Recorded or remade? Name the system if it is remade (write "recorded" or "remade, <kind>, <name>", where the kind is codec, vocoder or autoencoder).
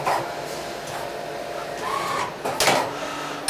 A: recorded